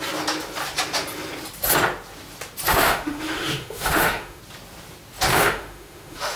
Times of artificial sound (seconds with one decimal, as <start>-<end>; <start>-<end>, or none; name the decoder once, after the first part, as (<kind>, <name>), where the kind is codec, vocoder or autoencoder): 2.7-4.4 (autoencoder, DAC-VAE); 5.3-6.4